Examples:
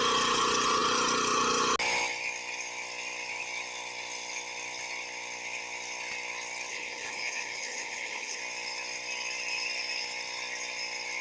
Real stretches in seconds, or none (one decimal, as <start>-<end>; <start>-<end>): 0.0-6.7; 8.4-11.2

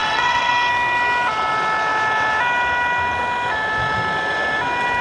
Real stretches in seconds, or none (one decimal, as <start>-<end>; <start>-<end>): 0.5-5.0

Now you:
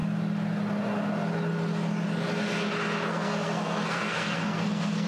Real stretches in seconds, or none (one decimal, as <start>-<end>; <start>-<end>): 0.0-3.1

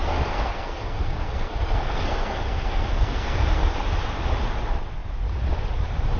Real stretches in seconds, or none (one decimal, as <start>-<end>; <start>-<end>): 3.7-6.2

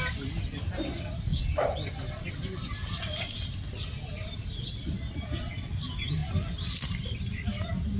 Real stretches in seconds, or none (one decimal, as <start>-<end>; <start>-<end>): 0.0-8.0

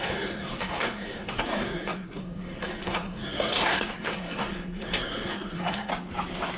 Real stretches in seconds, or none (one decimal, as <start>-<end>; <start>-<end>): 5.9-6.6